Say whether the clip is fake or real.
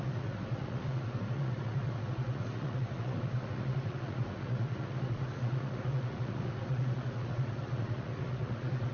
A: fake